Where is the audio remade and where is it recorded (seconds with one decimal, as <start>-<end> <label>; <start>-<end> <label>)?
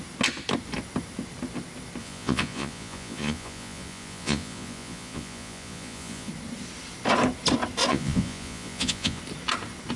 0.0-2.0 recorded; 2.0-6.3 remade; 6.3-7.9 recorded; 7.9-9.2 remade; 9.2-10.0 recorded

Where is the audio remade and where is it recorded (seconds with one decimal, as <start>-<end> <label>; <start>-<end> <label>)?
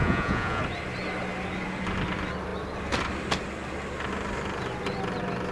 0.0-0.6 remade; 0.6-5.5 recorded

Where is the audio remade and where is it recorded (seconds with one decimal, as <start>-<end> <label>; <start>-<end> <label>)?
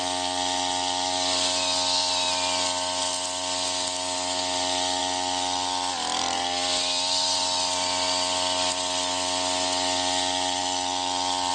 0.0-11.5 recorded